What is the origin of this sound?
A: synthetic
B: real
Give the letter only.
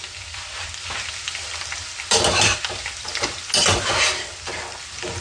B